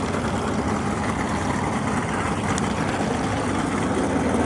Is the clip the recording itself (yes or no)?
yes